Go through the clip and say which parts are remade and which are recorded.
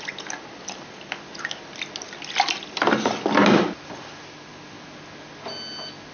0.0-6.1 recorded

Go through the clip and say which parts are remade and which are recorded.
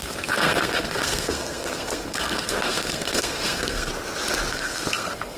0.0-3.9 remade; 3.9-4.5 recorded; 4.5-5.4 remade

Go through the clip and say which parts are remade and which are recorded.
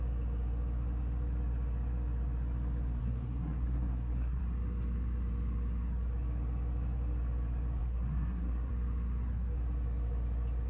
0.0-3.0 recorded; 3.0-4.4 remade; 4.4-7.8 recorded; 7.8-8.7 remade; 8.7-10.7 recorded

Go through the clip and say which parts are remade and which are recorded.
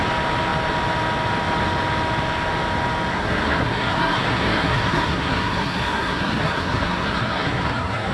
0.0-3.1 recorded; 3.1-8.1 remade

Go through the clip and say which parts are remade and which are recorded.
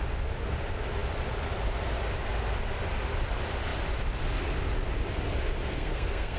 0.0-5.6 recorded; 5.6-6.4 remade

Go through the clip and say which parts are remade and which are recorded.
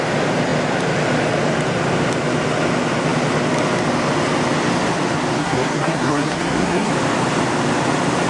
0.0-5.4 recorded; 5.4-6.9 remade; 6.9-8.3 recorded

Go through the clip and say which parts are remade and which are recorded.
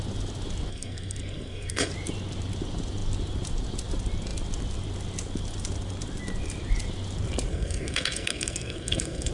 0.0-0.7 recorded; 0.7-1.9 remade; 1.9-7.5 recorded; 7.5-9.3 remade